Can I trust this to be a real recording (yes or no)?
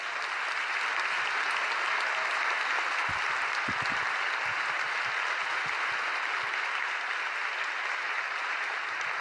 yes